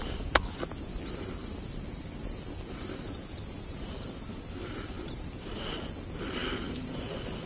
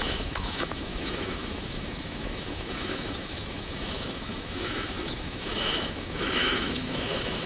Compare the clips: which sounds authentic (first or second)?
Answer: first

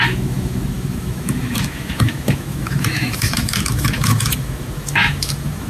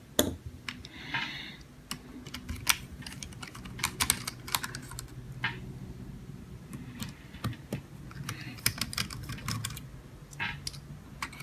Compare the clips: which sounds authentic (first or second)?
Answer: second